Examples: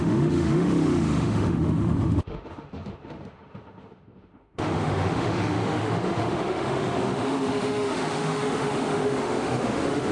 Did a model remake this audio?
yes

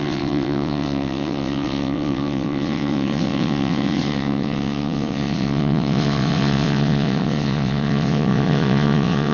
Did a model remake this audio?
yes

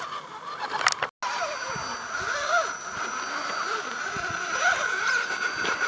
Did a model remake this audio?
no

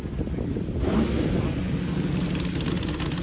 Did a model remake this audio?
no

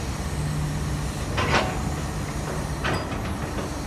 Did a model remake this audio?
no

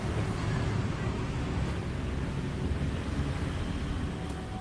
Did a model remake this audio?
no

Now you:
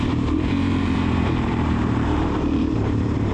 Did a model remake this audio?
yes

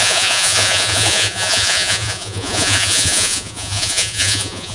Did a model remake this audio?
yes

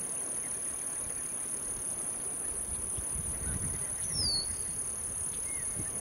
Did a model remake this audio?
yes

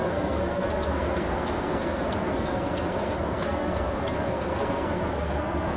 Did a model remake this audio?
yes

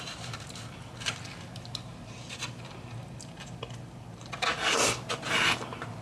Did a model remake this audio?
no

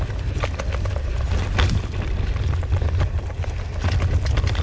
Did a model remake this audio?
no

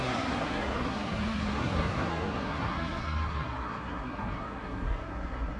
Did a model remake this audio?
yes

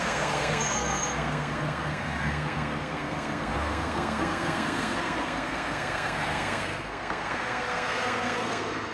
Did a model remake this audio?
yes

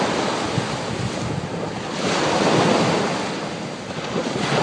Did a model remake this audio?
no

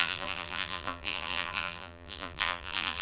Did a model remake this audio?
yes